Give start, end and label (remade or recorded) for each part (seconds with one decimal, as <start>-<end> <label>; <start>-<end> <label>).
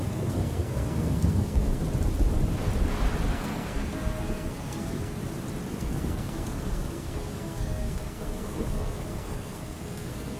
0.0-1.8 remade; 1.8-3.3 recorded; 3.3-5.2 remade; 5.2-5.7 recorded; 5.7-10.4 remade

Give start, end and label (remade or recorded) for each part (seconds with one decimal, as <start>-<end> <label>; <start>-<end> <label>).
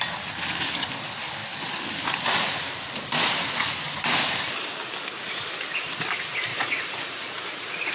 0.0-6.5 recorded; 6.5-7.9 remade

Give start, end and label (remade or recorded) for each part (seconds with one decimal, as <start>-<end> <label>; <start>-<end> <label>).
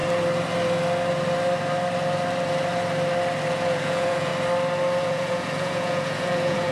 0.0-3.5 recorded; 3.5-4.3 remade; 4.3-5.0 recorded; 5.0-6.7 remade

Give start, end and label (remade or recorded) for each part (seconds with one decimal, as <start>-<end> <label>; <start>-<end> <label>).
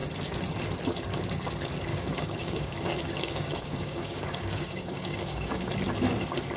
0.0-1.9 recorded; 1.9-5.7 remade; 5.7-6.6 recorded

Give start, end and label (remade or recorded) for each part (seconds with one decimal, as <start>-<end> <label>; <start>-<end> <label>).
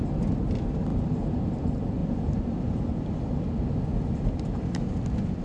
0.0-2.0 recorded; 2.0-5.4 remade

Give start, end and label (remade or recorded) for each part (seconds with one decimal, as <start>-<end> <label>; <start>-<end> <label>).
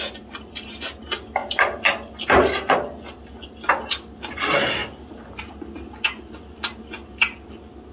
0.0-7.9 recorded